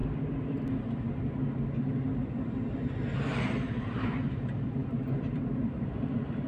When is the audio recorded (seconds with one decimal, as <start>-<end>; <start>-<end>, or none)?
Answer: 0.0-3.3; 4.2-4.8; 5.4-6.5